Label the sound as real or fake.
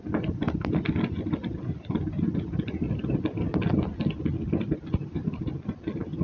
real